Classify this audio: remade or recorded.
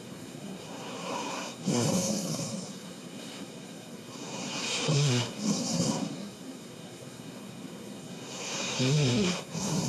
remade